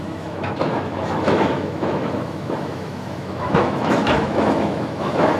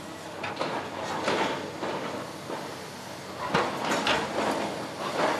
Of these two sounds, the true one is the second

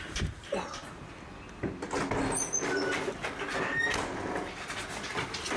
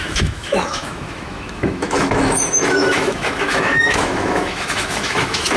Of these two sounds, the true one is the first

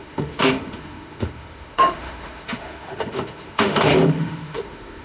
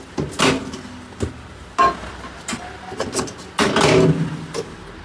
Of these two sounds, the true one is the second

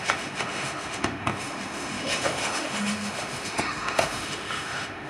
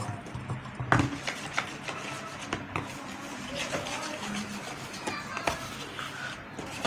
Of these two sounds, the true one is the second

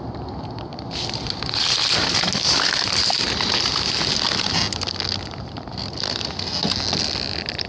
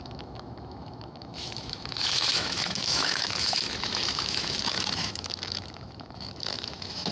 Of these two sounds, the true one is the first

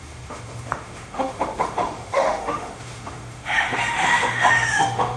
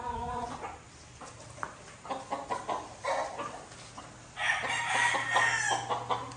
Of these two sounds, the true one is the second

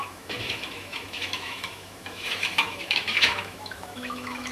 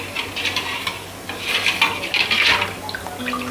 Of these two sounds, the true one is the second